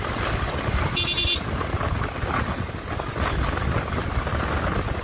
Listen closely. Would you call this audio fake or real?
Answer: real